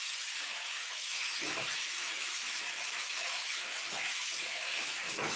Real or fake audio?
fake